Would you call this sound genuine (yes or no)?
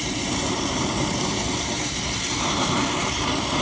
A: no